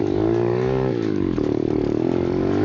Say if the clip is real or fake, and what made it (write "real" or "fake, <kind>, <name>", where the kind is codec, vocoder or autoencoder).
fake, codec, DAC